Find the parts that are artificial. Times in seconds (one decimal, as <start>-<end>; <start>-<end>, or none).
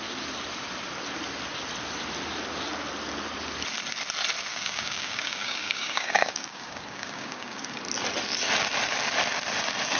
4.5-7.8